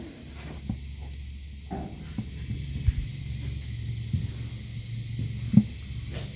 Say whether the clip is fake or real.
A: real